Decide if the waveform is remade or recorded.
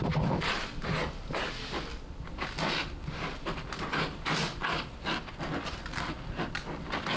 recorded